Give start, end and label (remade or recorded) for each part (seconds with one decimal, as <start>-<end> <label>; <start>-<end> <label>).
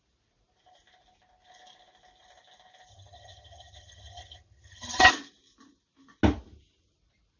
0.0-2.9 recorded; 2.9-5.1 remade; 5.1-7.4 recorded